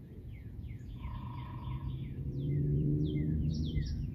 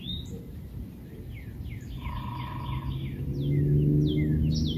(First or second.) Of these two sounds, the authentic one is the second